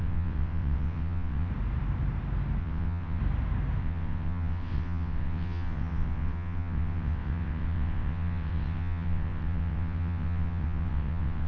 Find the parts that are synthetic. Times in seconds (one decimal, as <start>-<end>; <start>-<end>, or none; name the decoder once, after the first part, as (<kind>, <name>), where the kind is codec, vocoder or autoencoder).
0.0-1.5 (vocoder, WaveNeXt); 2.6-3.2; 3.8-11.5